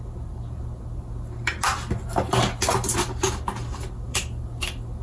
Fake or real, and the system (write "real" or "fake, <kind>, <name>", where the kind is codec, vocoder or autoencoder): real